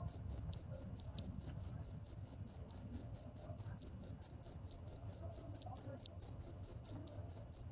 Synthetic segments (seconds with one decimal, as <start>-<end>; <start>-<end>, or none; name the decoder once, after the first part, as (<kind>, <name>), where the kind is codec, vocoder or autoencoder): 0.0-7.7 (vocoder, HiFi-GAN)